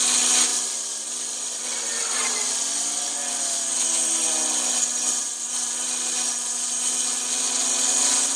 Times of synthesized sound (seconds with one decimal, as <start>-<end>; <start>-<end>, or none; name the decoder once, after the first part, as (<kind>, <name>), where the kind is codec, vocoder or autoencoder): none